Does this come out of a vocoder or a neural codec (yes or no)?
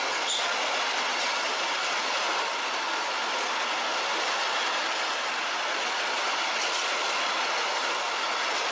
no